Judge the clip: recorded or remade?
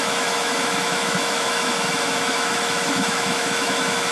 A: remade